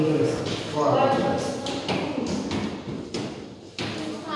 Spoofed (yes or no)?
no